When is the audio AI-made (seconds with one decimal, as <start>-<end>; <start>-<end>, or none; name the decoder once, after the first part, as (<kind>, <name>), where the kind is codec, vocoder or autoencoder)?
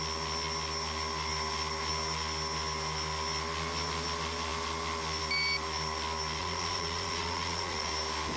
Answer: 6.4-7.9 (vocoder, Vocos)